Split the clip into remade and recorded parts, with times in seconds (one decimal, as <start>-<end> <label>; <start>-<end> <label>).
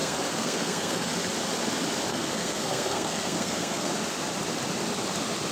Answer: 0.0-1.1 remade; 1.1-2.1 recorded; 2.1-3.9 remade; 3.9-5.5 recorded